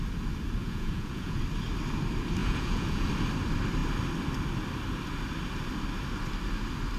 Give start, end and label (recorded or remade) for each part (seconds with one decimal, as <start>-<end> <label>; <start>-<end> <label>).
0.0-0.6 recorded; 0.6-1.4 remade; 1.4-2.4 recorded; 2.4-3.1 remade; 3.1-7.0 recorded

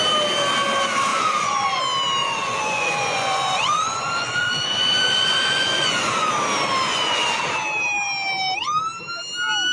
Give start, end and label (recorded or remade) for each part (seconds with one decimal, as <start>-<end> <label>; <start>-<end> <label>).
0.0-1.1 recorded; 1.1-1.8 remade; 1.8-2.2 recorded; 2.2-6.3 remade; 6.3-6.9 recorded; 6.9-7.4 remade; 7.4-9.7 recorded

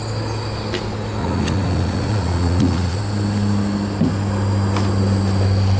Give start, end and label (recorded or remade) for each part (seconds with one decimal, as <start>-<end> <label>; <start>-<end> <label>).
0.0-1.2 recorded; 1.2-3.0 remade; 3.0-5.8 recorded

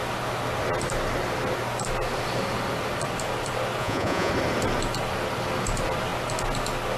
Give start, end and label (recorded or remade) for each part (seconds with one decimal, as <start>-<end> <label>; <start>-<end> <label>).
0.0-3.8 recorded; 3.8-4.3 remade; 4.3-7.0 recorded